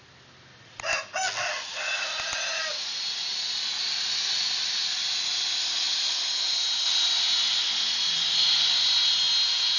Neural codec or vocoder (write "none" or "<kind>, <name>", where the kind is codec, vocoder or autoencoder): none